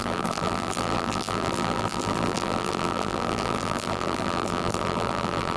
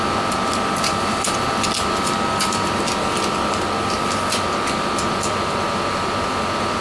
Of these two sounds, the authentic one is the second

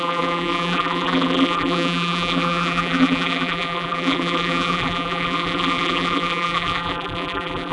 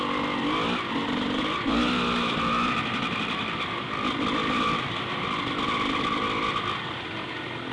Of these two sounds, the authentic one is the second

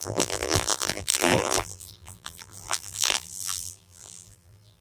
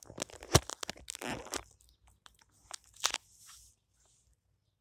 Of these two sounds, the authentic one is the second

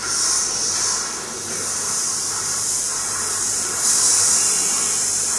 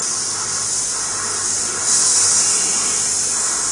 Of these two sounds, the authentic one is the second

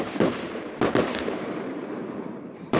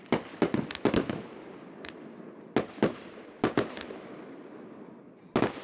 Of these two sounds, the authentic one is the second